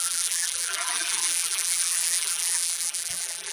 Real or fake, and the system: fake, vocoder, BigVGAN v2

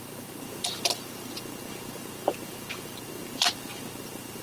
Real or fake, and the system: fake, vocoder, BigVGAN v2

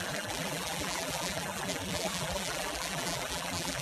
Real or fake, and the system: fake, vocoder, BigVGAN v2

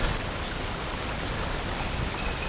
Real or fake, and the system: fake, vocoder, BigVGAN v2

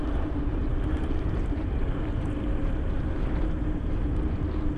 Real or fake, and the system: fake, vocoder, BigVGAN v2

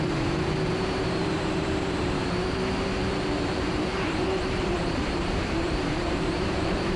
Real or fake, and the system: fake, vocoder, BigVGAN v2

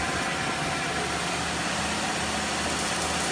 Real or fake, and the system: real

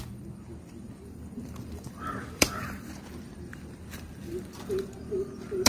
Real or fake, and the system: fake, vocoder, BigVGAN v2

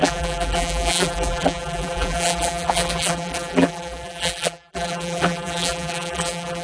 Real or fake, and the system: fake, vocoder, BigVGAN v2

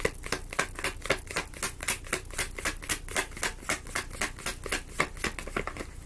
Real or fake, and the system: real